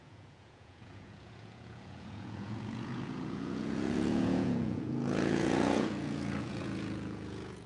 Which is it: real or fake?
fake